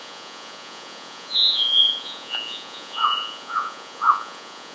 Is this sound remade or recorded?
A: remade